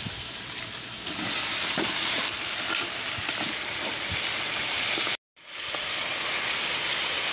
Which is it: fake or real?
real